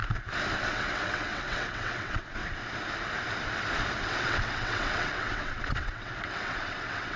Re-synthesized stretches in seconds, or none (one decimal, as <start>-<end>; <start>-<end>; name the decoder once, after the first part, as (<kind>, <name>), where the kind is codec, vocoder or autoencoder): 0.6-2.4 (vocoder, WaveNeXt); 4.0-7.2